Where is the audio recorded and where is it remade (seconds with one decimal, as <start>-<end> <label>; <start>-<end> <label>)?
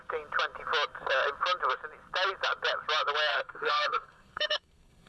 0.0-3.3 recorded; 3.3-5.1 remade